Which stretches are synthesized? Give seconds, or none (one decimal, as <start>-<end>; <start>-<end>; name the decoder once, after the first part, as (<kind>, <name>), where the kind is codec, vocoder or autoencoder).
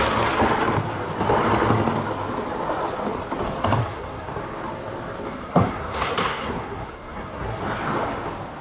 3.8-4.4 (codec, SNAC); 5.4-7.6